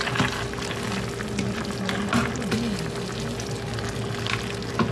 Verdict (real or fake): real